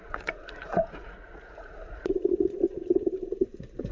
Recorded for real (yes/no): no